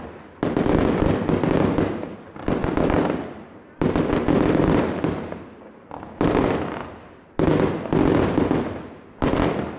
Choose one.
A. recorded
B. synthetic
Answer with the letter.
A